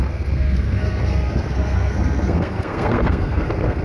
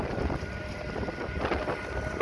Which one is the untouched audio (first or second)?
second